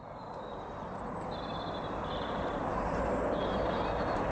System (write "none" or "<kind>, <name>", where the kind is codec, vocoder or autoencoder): none